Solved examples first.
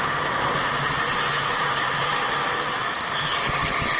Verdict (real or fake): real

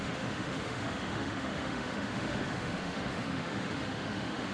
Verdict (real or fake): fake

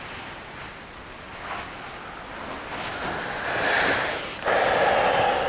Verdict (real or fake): real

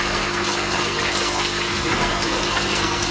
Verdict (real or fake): fake